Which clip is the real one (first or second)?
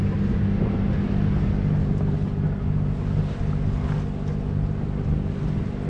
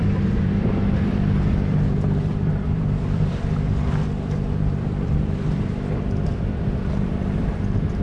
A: first